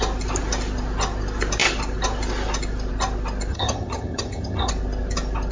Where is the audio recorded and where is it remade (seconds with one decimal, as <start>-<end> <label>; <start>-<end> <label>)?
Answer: 0.0-3.5 recorded; 3.5-4.7 remade; 4.7-5.5 recorded